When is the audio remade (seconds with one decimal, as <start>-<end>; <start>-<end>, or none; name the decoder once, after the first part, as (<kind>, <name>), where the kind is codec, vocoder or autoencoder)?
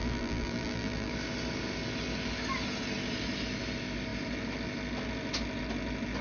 0.0-1.1 (vocoder, BigVGAN v2)